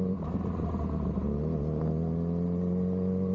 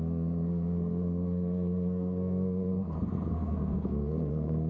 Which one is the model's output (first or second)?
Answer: second